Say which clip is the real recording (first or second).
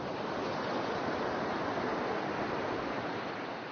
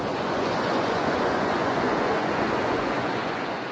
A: first